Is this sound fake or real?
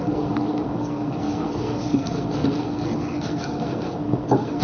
fake